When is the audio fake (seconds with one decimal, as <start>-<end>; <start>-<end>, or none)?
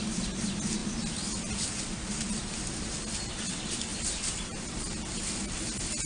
0.8-2.3; 3.9-5.3